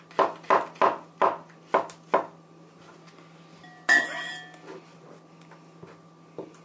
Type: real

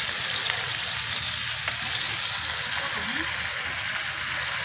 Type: real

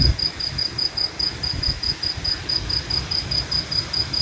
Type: real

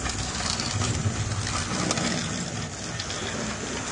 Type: real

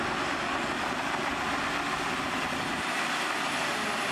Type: real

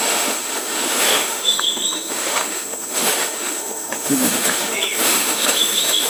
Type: fake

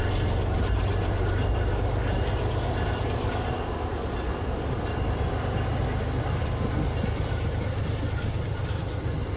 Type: real